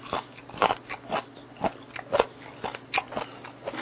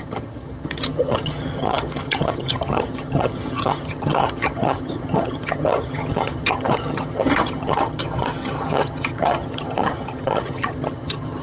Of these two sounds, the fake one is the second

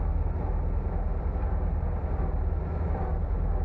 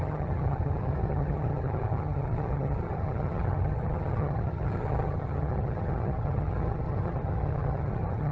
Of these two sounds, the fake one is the second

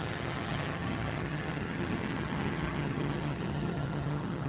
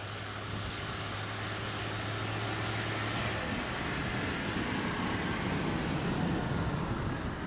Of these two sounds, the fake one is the first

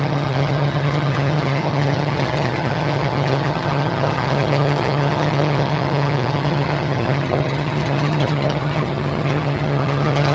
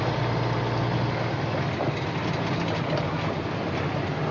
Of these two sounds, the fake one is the first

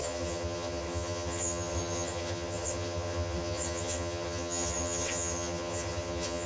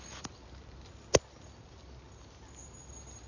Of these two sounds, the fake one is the first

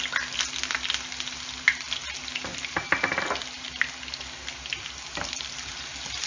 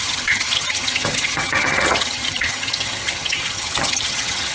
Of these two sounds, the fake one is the second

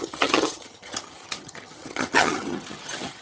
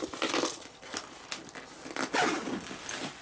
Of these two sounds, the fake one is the first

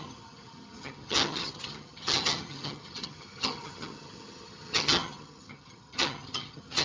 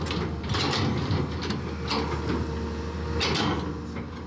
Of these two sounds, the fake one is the first